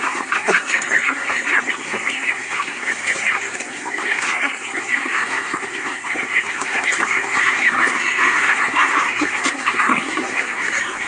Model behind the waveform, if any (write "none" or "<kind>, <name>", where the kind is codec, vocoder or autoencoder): codec, SNAC